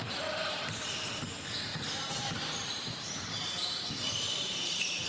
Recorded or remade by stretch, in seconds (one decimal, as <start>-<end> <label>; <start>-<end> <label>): 0.0-0.6 remade; 0.6-1.7 recorded; 1.7-5.1 remade